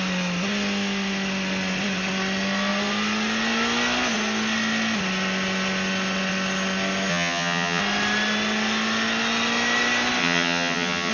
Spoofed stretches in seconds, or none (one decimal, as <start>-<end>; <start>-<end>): 7.1-7.8; 10.2-11.1